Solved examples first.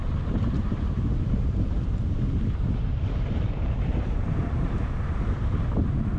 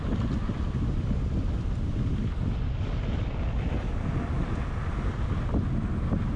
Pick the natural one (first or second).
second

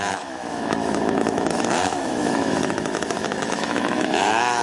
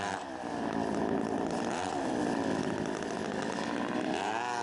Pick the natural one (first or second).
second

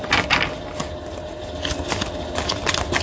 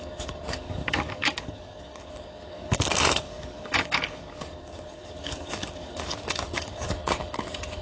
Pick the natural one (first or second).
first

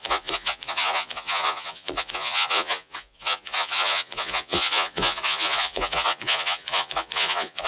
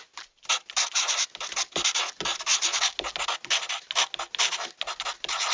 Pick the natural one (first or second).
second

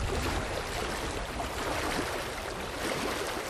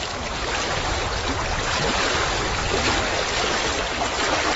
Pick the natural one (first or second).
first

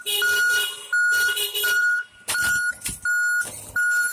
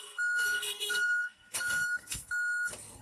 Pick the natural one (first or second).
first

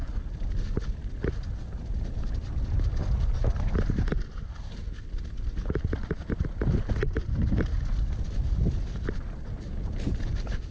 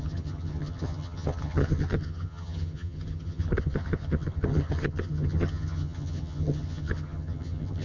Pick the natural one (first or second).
first